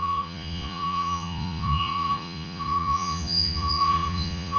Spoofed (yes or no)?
yes